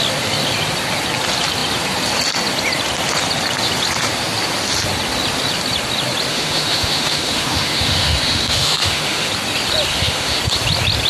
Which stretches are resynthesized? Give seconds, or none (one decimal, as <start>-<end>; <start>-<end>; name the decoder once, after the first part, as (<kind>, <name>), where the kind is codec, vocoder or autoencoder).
6.3-9.3 (autoencoder, DAC-VAE); 9.9-10.4